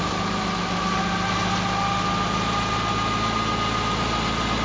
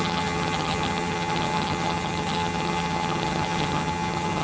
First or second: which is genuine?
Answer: first